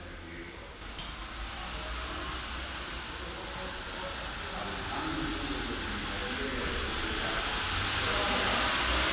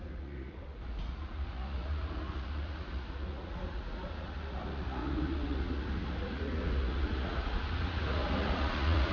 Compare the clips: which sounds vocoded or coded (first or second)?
second